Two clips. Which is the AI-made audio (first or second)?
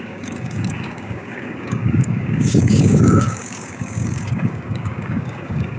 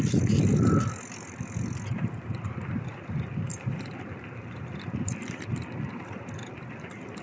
first